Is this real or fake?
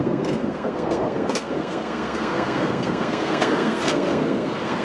fake